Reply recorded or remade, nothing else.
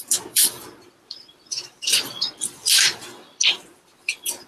remade